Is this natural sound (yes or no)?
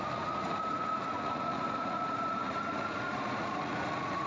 no